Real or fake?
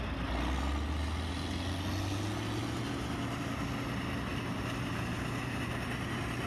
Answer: real